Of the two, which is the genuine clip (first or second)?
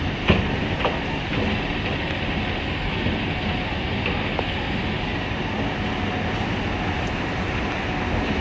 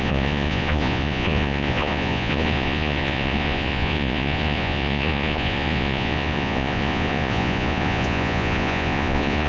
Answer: first